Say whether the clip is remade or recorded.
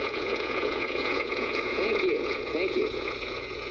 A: remade